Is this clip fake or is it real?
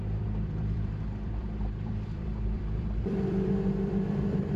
fake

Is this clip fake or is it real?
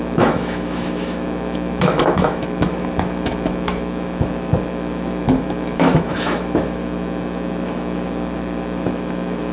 fake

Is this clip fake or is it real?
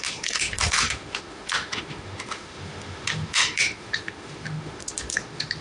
fake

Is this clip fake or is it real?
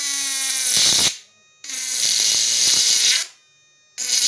real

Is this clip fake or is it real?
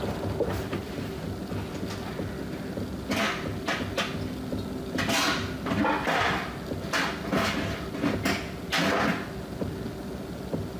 real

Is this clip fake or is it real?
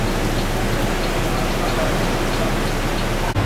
real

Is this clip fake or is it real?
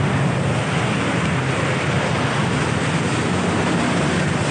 real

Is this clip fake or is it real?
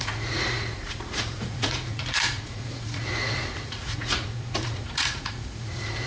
fake